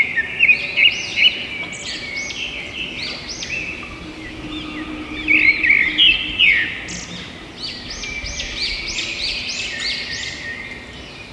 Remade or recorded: recorded